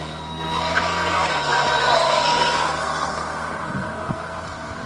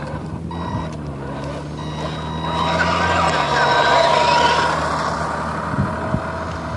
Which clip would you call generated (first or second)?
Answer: first